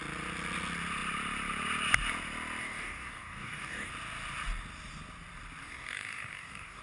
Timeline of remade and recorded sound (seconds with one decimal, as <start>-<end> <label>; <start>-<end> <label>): 0.0-2.6 recorded; 2.6-3.9 remade; 3.9-5.6 recorded; 5.6-6.8 remade